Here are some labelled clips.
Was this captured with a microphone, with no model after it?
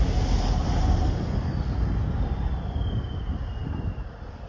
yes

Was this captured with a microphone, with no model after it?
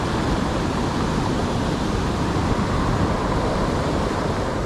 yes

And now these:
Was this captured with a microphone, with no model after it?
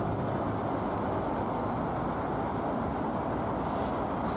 yes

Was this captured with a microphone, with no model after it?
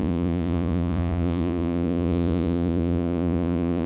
no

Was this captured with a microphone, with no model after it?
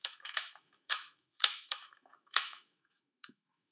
no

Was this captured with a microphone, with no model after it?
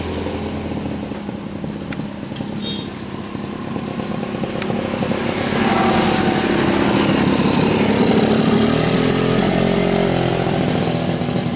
yes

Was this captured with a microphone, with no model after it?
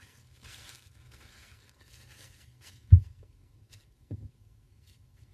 no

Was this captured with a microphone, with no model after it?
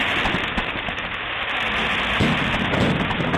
yes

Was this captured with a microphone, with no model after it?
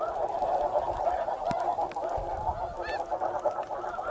yes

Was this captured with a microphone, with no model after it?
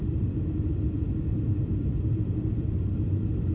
no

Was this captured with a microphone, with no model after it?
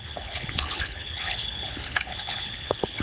no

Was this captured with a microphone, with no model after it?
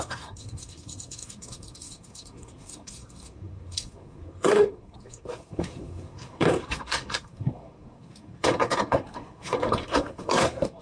no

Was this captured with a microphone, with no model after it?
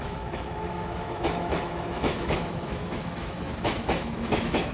no